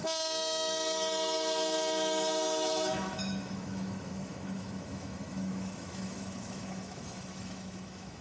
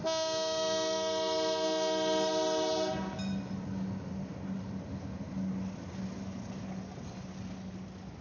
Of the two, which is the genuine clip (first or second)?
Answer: second